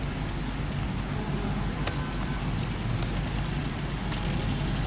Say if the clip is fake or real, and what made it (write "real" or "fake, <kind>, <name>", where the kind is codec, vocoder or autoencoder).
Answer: real